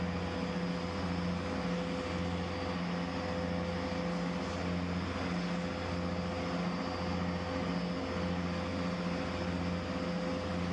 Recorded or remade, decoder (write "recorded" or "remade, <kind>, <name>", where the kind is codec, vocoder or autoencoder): recorded